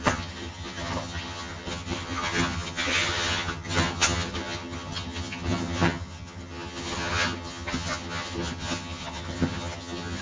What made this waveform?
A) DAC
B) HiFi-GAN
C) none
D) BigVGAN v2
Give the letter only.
B